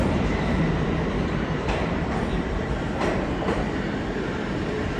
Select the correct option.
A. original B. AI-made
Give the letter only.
B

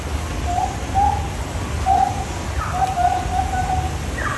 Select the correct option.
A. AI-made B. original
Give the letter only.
B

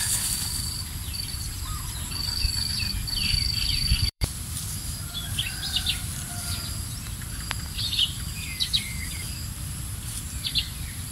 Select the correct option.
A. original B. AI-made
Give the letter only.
B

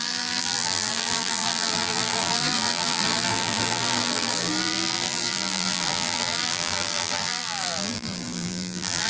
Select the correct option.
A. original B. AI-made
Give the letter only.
B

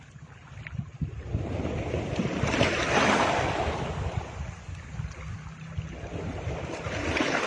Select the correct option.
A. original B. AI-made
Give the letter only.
A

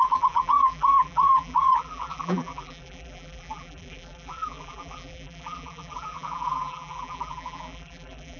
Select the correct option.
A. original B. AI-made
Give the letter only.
B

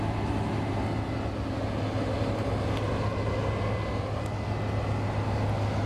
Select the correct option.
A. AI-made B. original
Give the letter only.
B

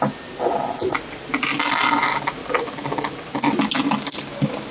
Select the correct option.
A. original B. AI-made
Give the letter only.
A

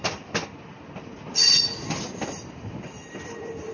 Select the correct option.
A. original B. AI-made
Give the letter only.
B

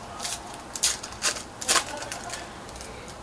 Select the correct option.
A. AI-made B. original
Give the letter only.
A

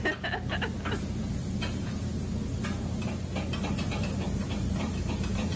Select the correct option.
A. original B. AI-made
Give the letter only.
A